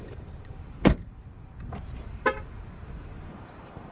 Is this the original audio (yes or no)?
no